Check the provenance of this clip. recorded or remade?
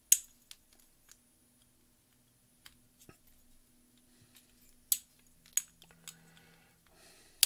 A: recorded